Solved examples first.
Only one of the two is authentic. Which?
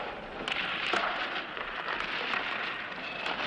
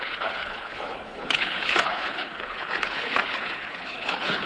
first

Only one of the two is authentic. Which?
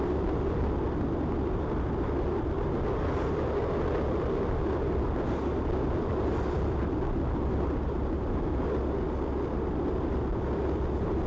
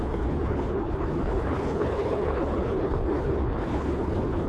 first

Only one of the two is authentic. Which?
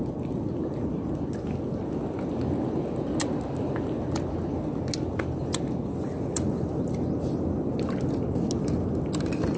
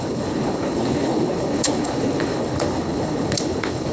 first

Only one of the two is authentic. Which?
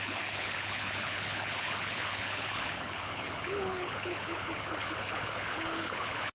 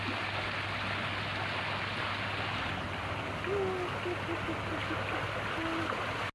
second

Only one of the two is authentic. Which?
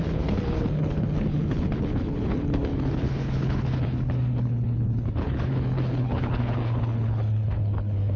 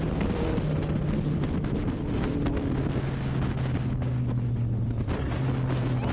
second